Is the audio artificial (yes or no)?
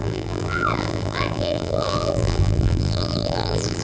yes